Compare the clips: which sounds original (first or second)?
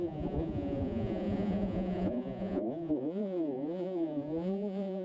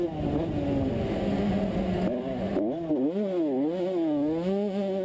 second